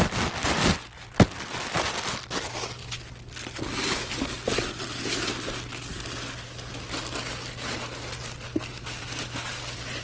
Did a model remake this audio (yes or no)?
no